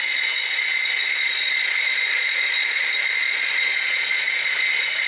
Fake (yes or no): yes